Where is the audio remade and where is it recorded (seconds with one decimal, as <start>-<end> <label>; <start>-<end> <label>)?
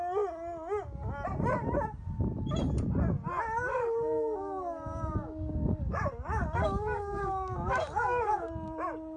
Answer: 0.0-3.7 recorded; 3.7-8.5 remade; 8.5-9.2 recorded